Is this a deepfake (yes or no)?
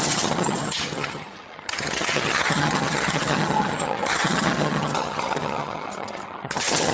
yes